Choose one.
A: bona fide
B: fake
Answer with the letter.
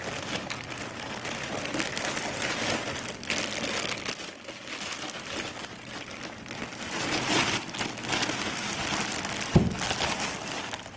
A